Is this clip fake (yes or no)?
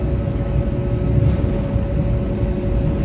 no